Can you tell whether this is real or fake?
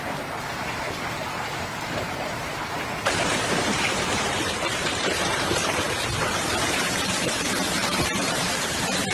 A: fake